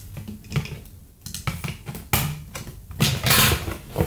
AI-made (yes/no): no